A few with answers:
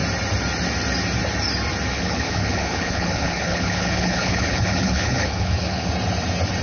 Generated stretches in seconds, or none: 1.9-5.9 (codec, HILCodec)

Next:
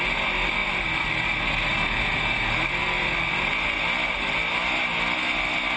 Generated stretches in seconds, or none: none

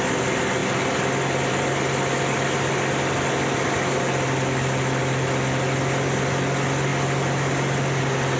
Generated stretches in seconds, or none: none